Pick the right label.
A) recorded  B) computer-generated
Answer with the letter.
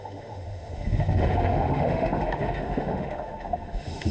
B